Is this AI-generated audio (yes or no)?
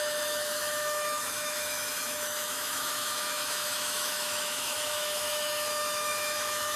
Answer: yes